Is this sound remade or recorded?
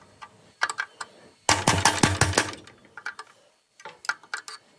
recorded